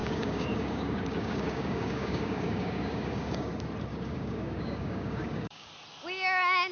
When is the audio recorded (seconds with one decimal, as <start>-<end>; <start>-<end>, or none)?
3.5-3.9; 5.7-6.7